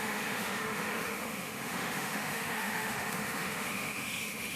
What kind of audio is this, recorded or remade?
remade